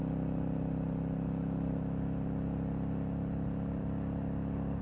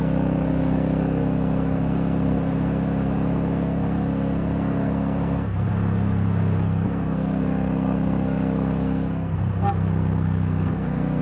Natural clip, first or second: first